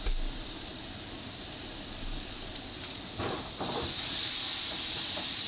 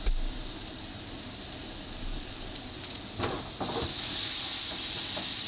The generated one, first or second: first